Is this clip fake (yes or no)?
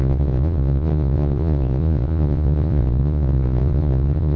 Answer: yes